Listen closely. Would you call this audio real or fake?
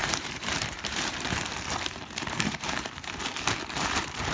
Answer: fake